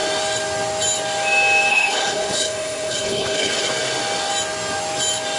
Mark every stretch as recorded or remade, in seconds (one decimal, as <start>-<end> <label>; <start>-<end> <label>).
0.0-1.7 recorded; 1.7-3.7 remade; 3.7-5.4 recorded